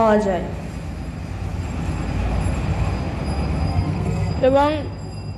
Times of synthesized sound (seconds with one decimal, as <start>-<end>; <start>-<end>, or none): 3.7-4.3